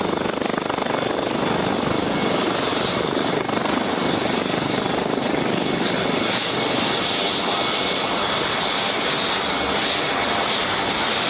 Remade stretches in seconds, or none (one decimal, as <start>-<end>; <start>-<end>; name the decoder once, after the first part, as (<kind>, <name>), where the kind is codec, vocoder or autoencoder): 2.7-5.4 (vocoder, BigVGAN v2)